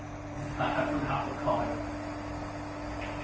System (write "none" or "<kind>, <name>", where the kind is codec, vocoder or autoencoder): none